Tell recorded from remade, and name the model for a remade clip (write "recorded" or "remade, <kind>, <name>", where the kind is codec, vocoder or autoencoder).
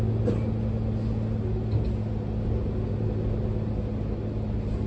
recorded